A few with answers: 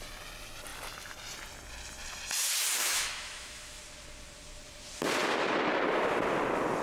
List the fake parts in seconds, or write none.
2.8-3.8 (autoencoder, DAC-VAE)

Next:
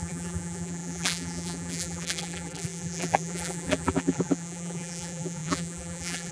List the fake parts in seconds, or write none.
0.0-6.3 (vocoder, BigVGAN v2)

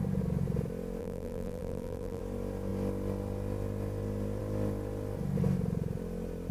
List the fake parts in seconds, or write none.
1.0-2.2 (vocoder, BigVGAN v2)

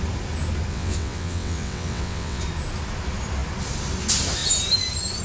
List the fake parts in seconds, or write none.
0.7-2.4 (vocoder, WaveNeXt)

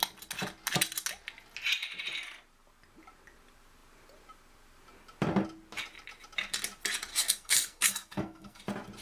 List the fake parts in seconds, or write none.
7.1-8.6 (codec, SNAC)

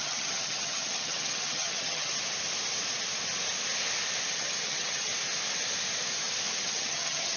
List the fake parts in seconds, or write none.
0.0-2.1 (vocoder, HiFi-GAN); 4.3-5.1; 6.6-7.4

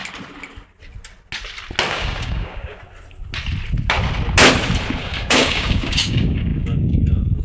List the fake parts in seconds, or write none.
1.9-2.8 (codec, DAC); 5.0-7.4

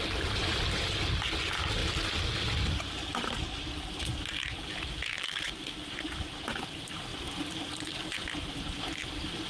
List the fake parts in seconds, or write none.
1.8-3.1 (vocoder, BigVGAN v2); 7.1-7.7